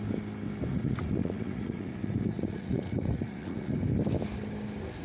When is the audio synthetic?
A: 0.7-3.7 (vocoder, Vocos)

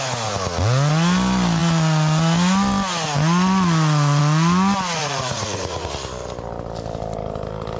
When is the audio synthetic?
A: 5.0-5.9 (vocoder, Vocos)

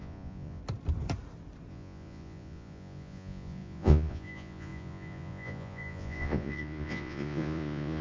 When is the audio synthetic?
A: 0.0-0.6 (vocoder, Vocos); 1.7-8.0

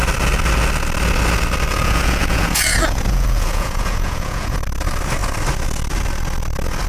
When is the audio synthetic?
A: 1.7-4.6 (vocoder, Vocos)

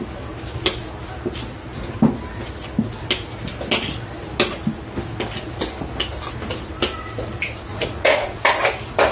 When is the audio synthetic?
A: 7.7-8.4 (vocoder, Vocos)